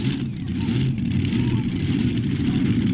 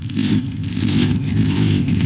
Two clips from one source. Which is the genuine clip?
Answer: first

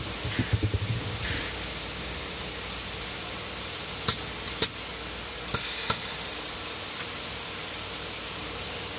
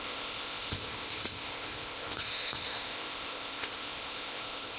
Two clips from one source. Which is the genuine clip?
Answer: first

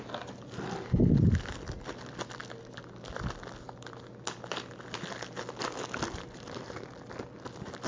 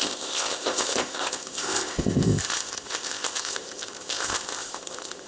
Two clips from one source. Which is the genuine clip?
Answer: first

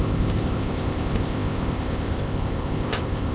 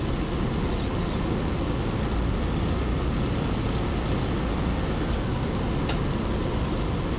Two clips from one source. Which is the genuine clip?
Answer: second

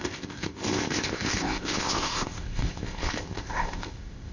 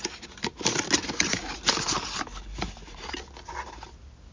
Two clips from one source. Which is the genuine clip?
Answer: second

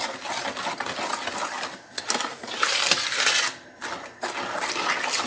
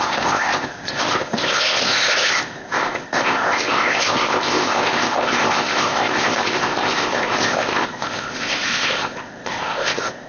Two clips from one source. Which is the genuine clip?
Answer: first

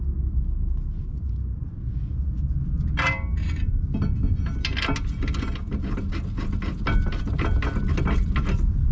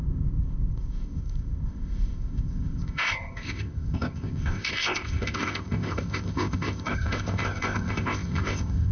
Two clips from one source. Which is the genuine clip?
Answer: first